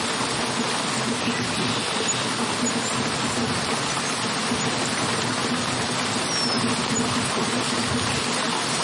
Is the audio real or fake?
real